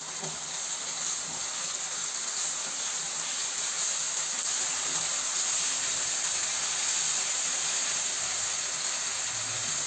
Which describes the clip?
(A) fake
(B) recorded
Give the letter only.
B